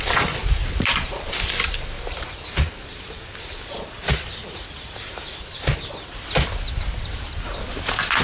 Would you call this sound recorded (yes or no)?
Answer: yes